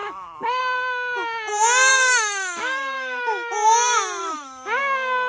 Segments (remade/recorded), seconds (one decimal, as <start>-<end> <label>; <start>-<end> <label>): 0.0-0.6 remade; 0.6-1.9 recorded; 1.9-3.5 remade; 3.5-4.2 recorded; 4.2-4.8 remade; 4.8-5.3 recorded